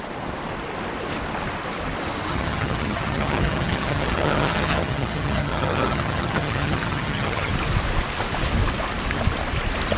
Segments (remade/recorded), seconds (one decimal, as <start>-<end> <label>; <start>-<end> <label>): 0.0-2.3 recorded; 2.3-7.5 remade; 7.5-10.0 recorded